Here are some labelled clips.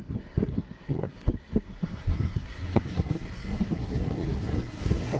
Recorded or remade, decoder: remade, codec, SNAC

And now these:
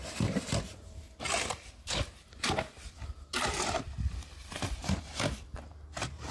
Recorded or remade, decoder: recorded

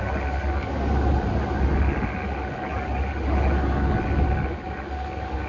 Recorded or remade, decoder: recorded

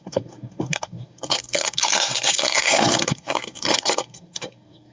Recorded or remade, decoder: remade, codec, SNAC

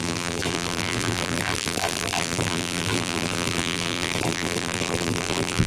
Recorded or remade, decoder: remade, vocoder, BigVGAN v2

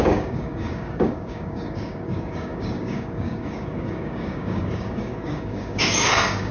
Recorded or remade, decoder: remade, codec, DAC